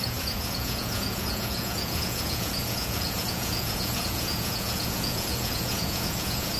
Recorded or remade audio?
remade